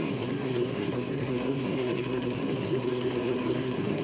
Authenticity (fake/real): fake